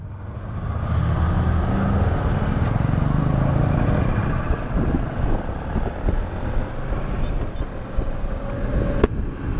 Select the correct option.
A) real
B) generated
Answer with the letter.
A